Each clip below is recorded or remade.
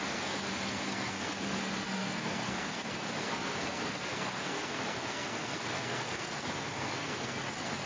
remade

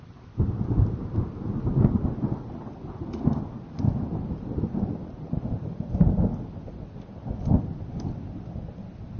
recorded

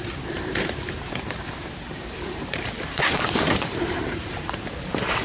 remade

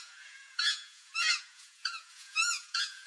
remade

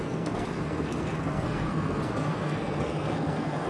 remade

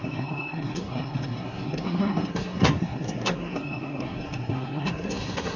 remade